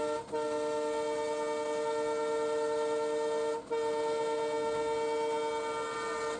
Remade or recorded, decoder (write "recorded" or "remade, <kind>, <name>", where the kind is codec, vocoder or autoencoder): recorded